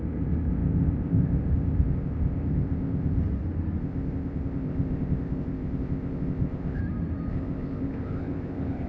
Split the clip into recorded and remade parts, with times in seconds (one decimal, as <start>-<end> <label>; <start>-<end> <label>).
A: 0.0-3.2 remade; 3.2-3.8 recorded; 3.8-6.8 remade; 6.8-7.3 recorded; 7.3-8.9 remade